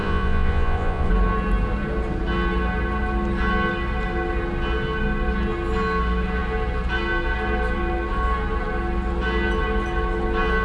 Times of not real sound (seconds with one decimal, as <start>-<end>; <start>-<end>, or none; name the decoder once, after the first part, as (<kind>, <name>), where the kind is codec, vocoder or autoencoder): 0.0-1.1 (vocoder, Vocos)